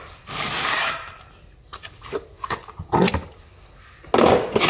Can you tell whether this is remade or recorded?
recorded